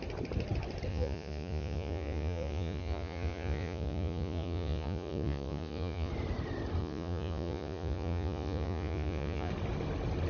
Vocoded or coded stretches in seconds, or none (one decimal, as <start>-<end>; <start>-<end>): 0.9-6.1; 6.8-9.5